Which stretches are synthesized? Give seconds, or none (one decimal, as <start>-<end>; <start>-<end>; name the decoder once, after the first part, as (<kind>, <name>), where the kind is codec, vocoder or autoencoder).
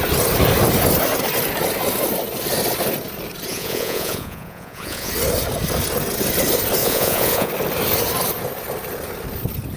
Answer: 3.5-5.1 (vocoder, Vocos); 6.8-7.5